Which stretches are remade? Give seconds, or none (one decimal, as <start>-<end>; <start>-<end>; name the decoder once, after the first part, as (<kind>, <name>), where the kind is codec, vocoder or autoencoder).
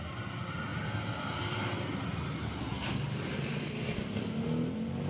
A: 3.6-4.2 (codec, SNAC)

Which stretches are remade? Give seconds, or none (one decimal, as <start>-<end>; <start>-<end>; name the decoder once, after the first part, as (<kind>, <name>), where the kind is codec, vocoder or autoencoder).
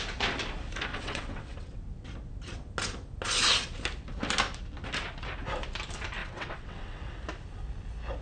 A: 0.9-1.8 (vocoder, WaveNeXt); 6.2-7.0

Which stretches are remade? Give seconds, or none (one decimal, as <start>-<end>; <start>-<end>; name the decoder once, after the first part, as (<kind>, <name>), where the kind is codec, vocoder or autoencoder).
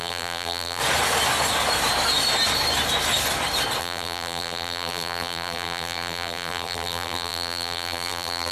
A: 0.0-0.8 (vocoder, BigVGAN v2); 3.8-8.5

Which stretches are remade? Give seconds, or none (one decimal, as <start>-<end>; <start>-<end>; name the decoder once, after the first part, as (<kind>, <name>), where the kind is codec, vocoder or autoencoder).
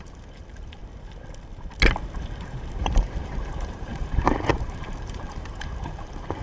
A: 0.0-0.8 (vocoder, BigVGAN v2); 2.8-6.4